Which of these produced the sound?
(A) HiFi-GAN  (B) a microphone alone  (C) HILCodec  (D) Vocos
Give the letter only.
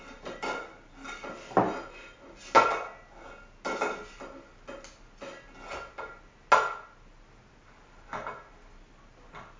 B